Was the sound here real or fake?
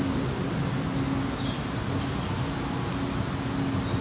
real